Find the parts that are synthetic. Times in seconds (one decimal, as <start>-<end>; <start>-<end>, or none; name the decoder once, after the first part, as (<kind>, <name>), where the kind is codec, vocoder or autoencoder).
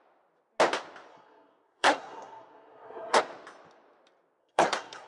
1.1-3.2 (codec, SNAC); 4.4-5.1